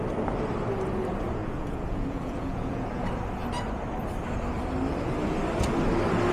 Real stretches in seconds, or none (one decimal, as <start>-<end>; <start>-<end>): 0.0-1.4; 3.0-6.3